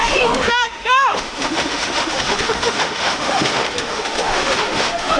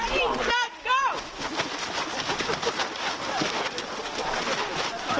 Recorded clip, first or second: second